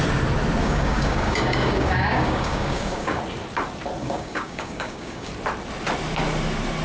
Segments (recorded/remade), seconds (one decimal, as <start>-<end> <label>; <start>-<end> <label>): 0.0-0.6 recorded; 0.6-3.2 remade; 3.2-4.0 recorded; 4.0-5.3 remade; 5.3-6.8 recorded